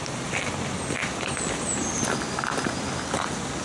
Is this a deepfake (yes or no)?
no